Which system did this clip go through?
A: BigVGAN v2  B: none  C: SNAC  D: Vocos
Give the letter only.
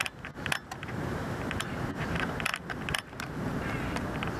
B